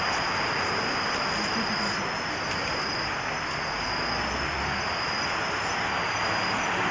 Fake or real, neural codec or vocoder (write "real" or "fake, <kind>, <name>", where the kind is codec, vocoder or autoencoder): real